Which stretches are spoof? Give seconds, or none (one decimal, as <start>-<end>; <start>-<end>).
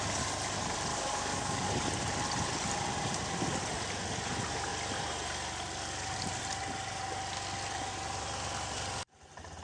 0.9-1.8